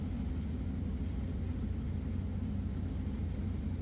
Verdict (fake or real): real